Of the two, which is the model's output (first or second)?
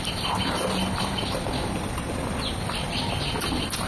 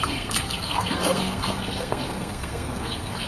second